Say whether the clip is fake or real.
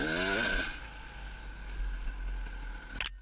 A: real